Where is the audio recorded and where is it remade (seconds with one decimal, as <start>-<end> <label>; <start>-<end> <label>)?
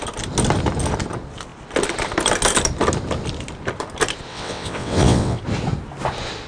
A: 0.0-4.3 recorded; 4.3-5.4 remade; 5.4-6.5 recorded